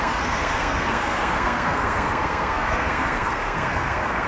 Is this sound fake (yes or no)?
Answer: yes